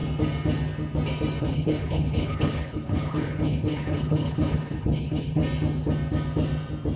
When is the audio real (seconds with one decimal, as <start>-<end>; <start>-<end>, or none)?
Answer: 0.0-1.4; 5.4-7.0